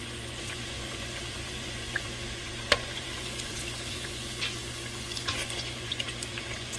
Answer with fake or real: fake